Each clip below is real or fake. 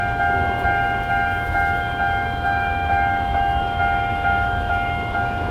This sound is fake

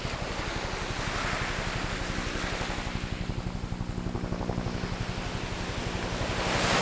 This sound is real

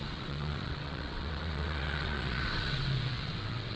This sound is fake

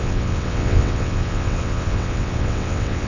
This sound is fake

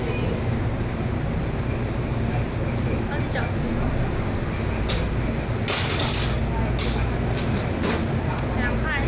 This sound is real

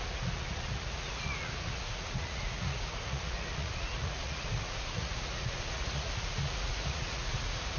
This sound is fake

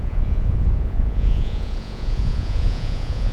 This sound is fake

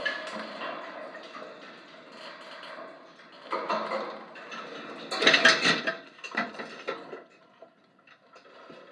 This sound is real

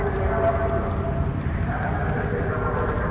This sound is real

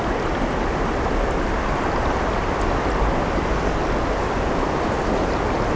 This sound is real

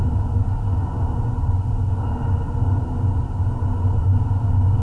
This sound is real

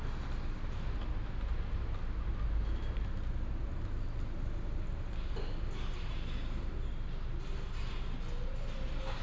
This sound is real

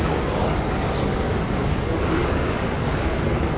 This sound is fake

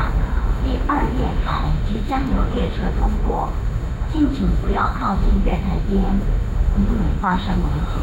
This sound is fake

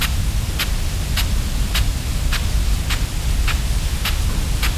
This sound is real